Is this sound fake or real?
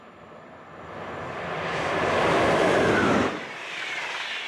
real